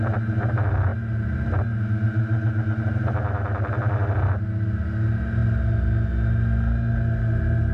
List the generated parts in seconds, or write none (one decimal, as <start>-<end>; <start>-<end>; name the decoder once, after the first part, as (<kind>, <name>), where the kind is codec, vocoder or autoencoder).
none